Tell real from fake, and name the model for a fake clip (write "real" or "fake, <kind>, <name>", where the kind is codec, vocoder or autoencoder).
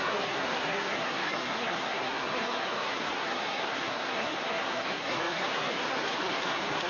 fake, codec, SNAC